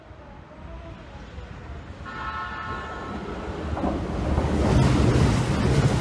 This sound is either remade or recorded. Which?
recorded